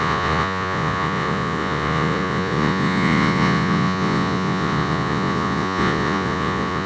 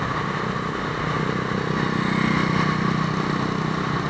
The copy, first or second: first